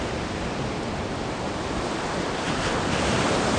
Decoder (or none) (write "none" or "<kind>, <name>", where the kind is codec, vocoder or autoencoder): vocoder, BigVGAN v2